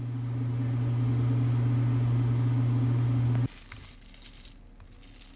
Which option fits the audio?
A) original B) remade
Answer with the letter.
A